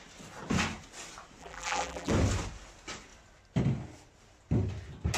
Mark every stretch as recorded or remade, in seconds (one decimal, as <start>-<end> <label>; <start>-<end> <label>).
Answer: 0.0-1.4 recorded; 1.4-2.1 remade; 2.1-5.2 recorded